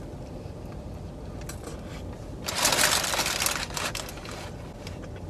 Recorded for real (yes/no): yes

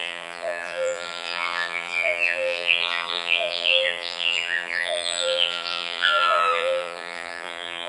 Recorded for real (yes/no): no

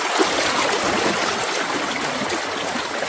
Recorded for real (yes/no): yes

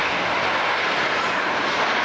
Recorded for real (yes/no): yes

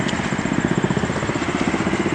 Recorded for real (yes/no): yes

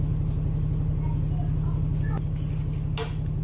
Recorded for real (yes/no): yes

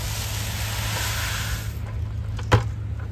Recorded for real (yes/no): yes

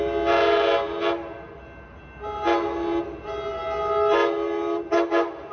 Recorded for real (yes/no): yes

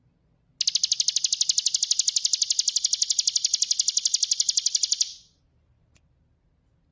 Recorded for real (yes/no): yes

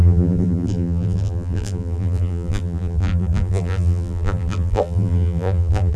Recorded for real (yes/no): no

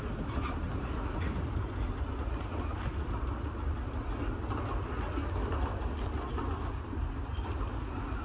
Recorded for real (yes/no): yes